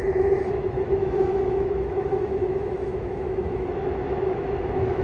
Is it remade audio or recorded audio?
remade